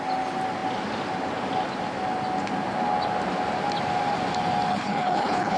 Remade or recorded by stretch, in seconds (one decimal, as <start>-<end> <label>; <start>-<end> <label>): 0.0-4.7 recorded; 4.7-5.6 remade